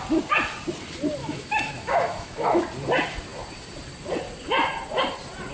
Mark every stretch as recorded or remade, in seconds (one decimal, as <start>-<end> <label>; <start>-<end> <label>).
0.0-1.2 recorded; 1.2-2.6 remade; 2.6-5.5 recorded